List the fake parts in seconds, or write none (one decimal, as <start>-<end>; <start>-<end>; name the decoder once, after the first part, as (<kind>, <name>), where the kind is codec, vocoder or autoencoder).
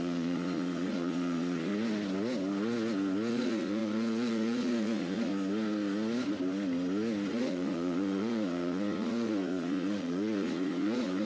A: 0.0-1.7 (vocoder, Vocos); 3.3-5.3; 7.3-11.3